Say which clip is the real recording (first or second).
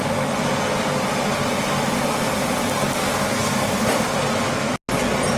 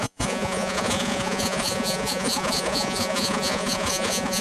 first